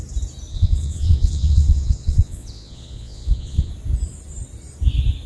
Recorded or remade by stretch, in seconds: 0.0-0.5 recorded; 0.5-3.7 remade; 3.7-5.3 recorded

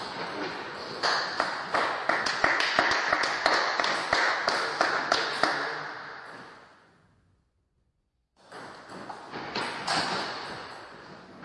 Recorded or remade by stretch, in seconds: 0.0-4.4 remade; 4.4-4.9 recorded; 4.9-5.5 remade; 5.5-6.1 recorded; 6.1-11.4 remade

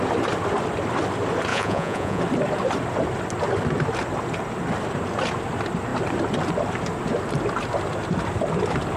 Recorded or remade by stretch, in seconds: 0.0-1.5 recorded; 1.5-2.2 remade; 2.2-9.0 recorded

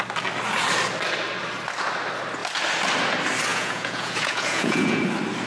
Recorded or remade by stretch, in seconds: 0.0-3.5 recorded; 3.5-5.0 remade; 5.0-5.5 recorded

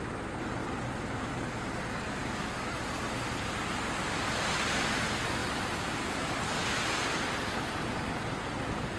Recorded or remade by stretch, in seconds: 0.0-9.0 recorded

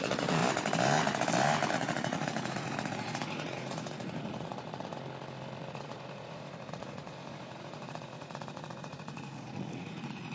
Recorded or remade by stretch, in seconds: 0.0-0.4 remade; 0.4-1.7 recorded; 1.7-4.9 remade; 4.9-5.8 recorded; 5.8-10.3 remade

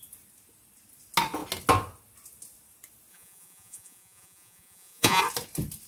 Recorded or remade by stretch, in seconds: 0.0-3.1 recorded; 3.1-5.2 remade; 5.2-5.9 recorded

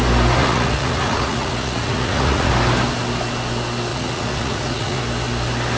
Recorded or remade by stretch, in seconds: 0.0-0.4 recorded; 0.4-2.5 remade; 2.5-3.9 recorded; 3.9-5.0 remade; 5.0-5.8 recorded